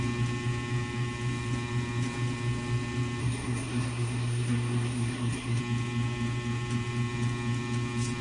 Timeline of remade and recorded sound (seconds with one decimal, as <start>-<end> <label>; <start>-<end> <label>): 0.0-3.2 recorded; 3.2-5.6 remade; 5.6-8.2 recorded